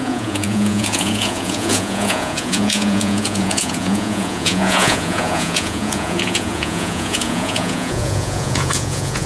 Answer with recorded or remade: remade